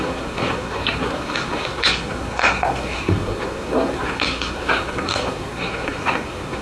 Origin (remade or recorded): remade